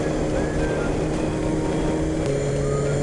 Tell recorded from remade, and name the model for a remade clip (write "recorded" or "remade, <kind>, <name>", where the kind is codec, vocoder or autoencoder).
recorded